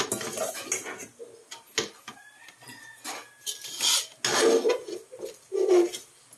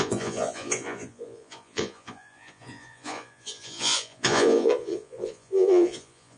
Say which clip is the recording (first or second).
first